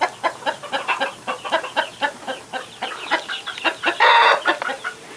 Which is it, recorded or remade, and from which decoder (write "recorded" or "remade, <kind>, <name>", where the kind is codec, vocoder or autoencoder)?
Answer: recorded